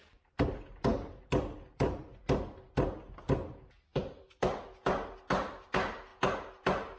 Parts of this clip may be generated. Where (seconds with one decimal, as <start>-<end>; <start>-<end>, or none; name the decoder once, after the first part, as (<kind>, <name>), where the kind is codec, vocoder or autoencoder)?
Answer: none